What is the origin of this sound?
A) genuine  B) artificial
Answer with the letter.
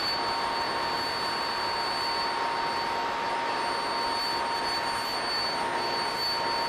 A